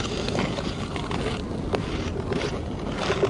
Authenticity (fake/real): real